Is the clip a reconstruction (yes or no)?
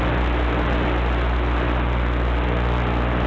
no